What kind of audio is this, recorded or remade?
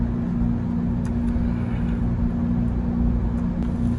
recorded